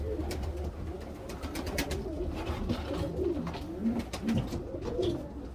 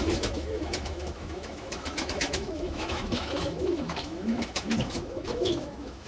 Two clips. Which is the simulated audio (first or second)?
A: second